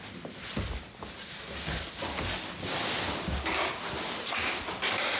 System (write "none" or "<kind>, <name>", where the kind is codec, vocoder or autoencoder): none